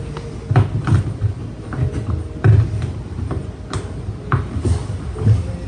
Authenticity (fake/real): real